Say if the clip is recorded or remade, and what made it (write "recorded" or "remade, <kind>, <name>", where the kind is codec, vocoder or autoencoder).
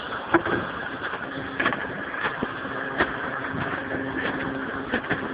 recorded